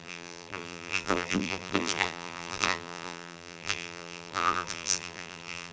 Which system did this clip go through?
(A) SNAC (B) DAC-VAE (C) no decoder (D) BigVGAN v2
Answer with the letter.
D